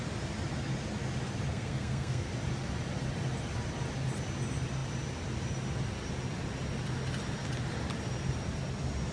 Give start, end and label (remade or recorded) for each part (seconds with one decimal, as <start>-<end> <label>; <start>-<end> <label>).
0.0-1.5 recorded; 1.5-2.3 remade; 2.3-9.1 recorded